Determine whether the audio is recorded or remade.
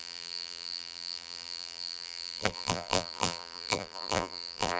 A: remade